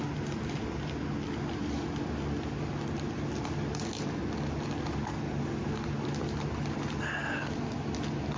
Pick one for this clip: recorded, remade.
recorded